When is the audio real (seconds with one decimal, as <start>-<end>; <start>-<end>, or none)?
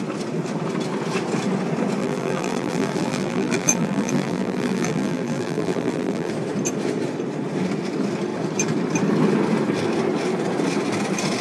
0.0-2.0; 6.3-11.4